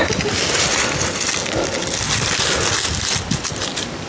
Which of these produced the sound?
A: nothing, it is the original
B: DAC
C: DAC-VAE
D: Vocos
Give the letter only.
A